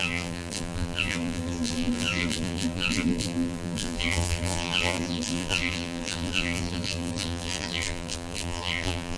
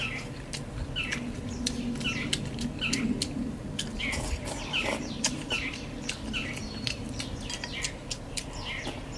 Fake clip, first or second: first